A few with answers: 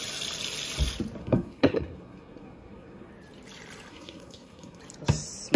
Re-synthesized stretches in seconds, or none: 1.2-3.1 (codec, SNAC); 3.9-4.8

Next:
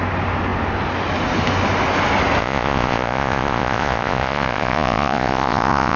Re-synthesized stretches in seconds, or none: 2.4-6.0 (vocoder, Vocos)